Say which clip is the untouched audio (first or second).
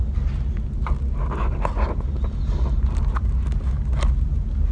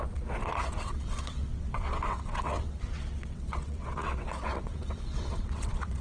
first